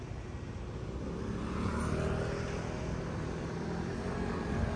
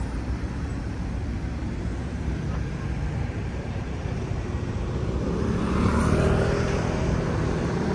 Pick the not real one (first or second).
second